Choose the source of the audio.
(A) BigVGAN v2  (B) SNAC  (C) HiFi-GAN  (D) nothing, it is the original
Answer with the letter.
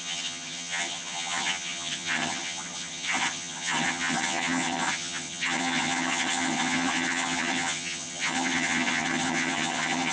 C